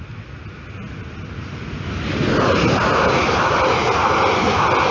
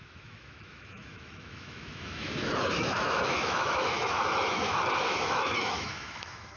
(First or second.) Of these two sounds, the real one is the first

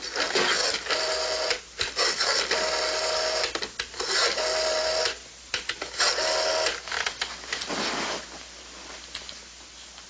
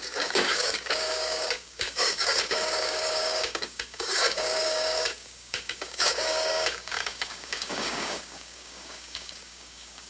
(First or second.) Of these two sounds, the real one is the first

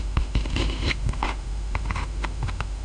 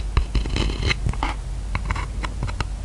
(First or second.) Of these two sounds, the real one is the second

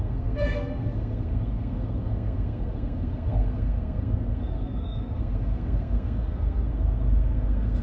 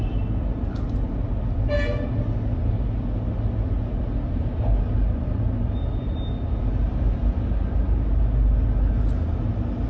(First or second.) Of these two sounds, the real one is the second